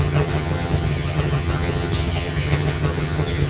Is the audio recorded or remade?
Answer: remade